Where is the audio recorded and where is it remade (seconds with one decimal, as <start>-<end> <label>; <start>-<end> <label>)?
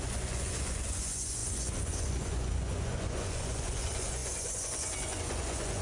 0.0-5.8 remade